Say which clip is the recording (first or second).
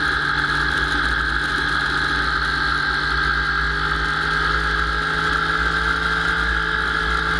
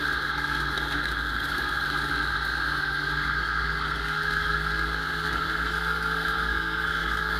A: first